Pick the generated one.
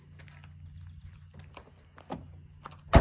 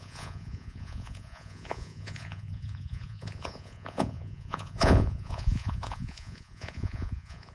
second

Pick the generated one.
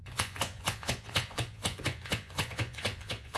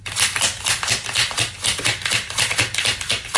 first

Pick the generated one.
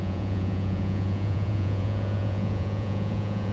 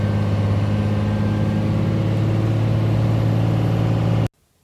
first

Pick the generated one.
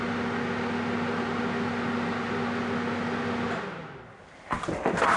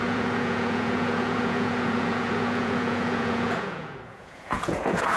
second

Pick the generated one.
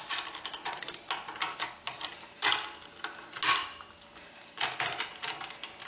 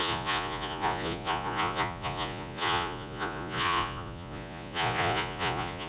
second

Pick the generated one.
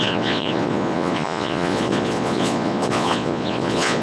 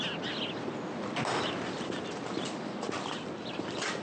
first